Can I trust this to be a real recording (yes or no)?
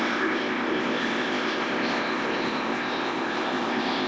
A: no